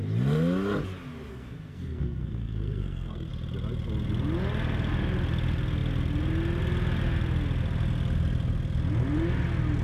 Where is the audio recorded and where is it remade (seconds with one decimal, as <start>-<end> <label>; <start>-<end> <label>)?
0.0-1.3 recorded; 1.3-3.3 remade; 3.3-9.8 recorded